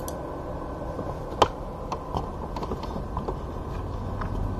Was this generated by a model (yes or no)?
no